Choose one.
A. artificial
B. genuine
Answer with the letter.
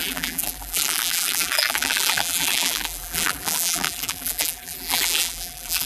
A